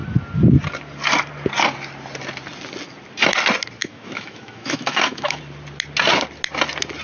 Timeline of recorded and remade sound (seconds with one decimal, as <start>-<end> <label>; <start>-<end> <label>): 0.0-3.8 recorded; 3.8-5.4 remade; 5.4-7.0 recorded